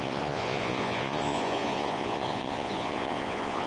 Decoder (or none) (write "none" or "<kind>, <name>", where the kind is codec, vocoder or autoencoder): vocoder, Vocos